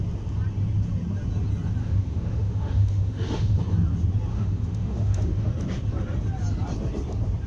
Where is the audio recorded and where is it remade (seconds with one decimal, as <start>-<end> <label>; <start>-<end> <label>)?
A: 0.0-1.8 recorded; 1.8-3.6 remade; 3.6-4.3 recorded; 4.3-5.5 remade; 5.5-7.5 recorded